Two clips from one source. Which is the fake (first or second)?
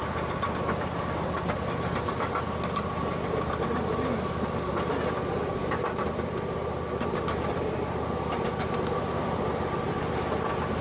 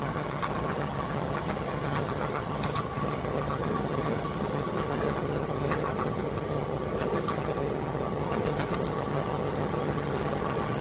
second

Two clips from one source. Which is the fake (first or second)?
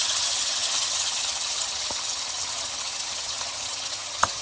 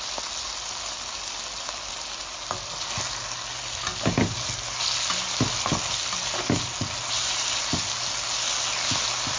first